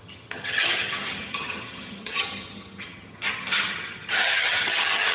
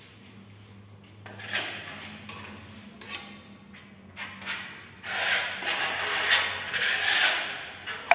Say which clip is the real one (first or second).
second